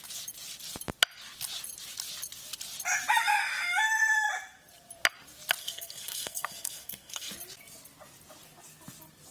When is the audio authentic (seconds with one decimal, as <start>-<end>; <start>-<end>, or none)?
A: 0.0-5.6; 7.3-9.3